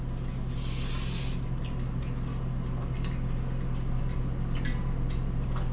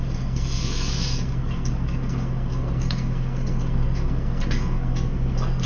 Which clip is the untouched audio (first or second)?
first